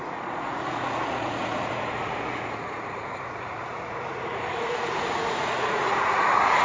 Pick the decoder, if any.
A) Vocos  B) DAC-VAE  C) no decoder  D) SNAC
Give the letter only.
A